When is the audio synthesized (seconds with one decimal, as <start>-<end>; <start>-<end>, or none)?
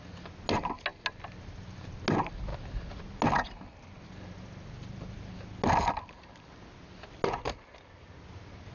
none